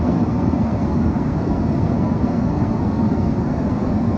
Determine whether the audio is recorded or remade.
remade